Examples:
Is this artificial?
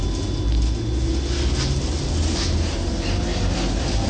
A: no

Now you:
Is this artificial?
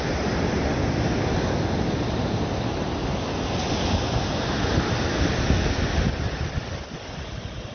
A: no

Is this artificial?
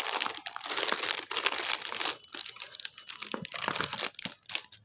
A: no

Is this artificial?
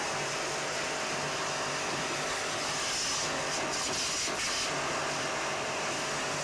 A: no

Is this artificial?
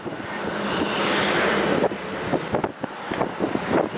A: no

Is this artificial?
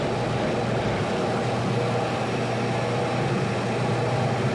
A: no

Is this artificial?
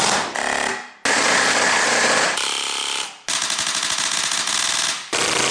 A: no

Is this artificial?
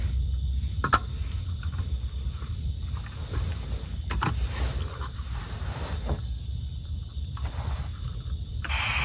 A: no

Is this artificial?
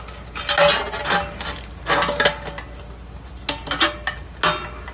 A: no